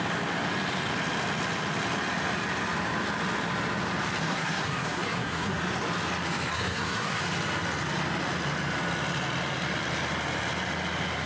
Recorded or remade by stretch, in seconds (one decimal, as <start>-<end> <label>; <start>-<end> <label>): 0.0-4.2 recorded; 4.2-5.6 remade; 5.6-6.5 recorded; 6.5-7.2 remade; 7.2-11.3 recorded